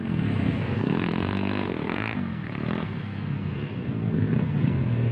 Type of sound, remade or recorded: remade